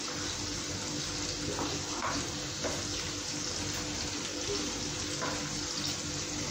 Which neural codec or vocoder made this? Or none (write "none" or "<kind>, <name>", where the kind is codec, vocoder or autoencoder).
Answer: none